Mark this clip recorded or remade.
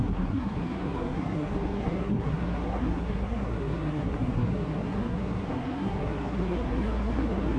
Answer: remade